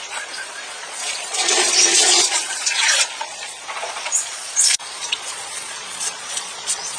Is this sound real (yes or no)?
no